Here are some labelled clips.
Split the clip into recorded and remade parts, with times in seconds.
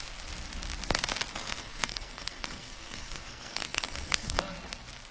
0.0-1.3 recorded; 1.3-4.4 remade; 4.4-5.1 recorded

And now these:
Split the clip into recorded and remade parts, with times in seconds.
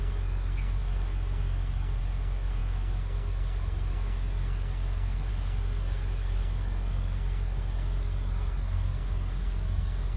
0.0-10.2 remade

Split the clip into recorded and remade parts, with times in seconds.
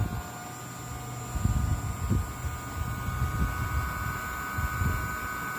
0.0-5.6 recorded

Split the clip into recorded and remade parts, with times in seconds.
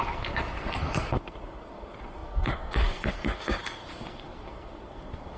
0.0-5.4 remade